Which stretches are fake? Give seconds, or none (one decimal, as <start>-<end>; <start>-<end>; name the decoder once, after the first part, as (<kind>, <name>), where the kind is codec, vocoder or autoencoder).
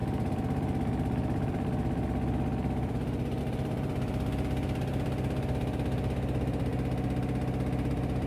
0.0-6.7 (vocoder, BigVGAN v2); 7.9-8.3